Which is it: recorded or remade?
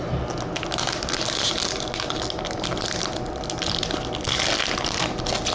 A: recorded